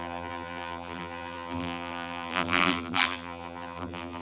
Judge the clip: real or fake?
fake